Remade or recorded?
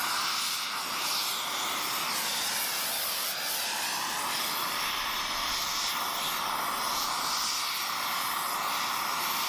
recorded